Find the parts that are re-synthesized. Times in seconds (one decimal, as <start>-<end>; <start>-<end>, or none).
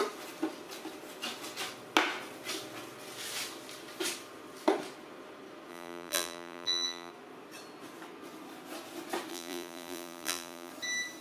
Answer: 5.7-7.1; 9.3-10.7